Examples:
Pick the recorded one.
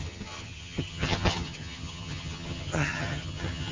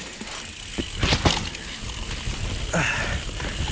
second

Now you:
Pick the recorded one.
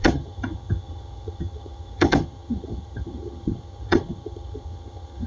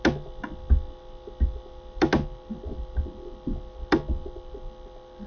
second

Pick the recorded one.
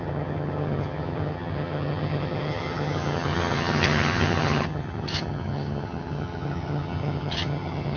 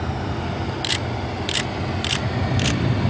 second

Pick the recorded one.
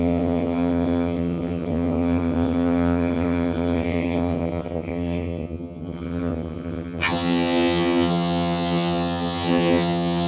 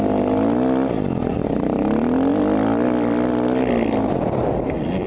second